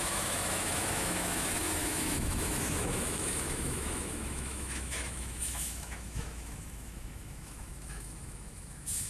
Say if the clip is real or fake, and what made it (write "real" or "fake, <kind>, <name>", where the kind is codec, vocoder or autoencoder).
fake, autoencoder, DAC-VAE